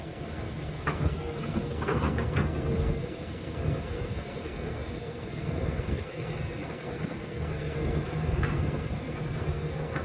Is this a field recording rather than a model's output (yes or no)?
no